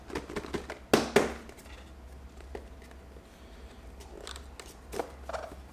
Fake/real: real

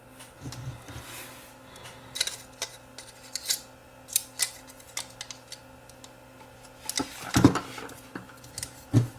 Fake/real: real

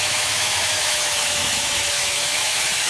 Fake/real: fake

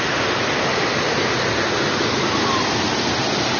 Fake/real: real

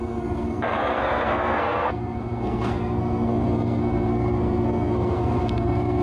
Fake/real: fake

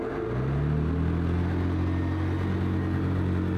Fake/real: real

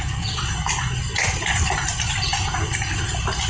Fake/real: real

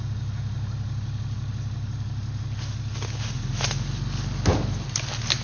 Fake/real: real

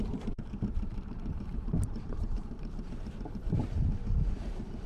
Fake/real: fake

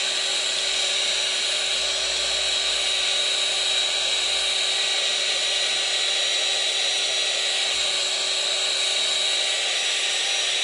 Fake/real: real